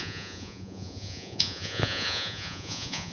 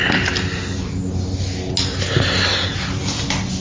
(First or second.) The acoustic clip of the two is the second